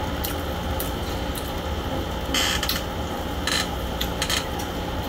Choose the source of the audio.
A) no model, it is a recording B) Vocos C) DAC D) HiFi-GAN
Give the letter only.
A